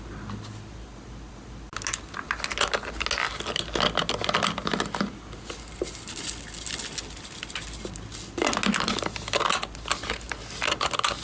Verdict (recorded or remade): recorded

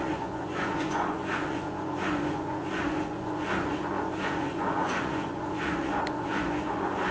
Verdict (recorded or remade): remade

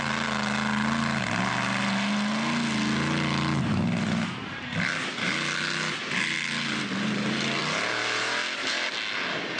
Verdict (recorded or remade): recorded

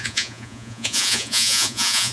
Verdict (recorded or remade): remade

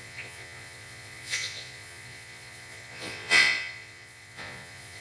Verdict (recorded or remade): remade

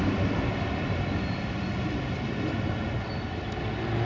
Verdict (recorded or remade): recorded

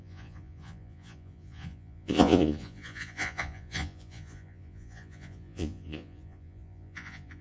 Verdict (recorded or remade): remade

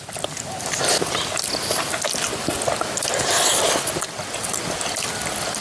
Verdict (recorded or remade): recorded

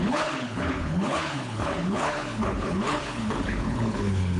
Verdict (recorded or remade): remade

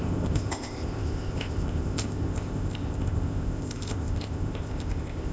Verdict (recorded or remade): remade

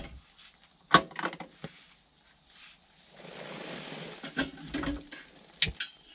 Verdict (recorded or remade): recorded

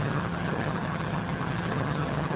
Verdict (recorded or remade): remade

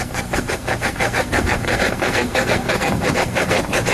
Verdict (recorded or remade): remade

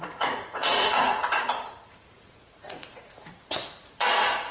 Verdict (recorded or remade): remade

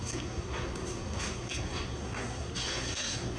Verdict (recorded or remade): remade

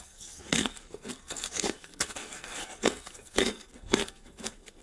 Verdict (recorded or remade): remade